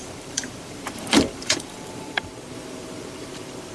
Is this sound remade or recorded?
remade